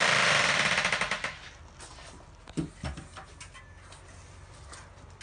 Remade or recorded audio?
recorded